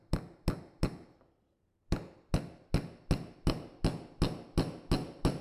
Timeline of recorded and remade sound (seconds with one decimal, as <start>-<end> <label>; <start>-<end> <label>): 0.0-5.4 recorded